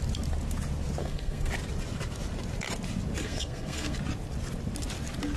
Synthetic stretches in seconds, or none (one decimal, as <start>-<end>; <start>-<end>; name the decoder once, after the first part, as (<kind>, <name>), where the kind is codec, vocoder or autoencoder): 1.0-1.5 (codec, SNAC); 3.2-4.0